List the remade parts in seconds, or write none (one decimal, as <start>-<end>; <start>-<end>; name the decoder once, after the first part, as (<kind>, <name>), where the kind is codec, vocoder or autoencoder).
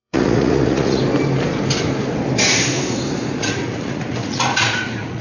0.0-1.0 (vocoder, Vocos); 3.4-5.2